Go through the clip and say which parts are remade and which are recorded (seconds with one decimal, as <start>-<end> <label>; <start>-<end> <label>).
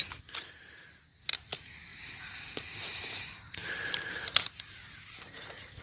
0.0-1.9 recorded; 1.9-5.8 remade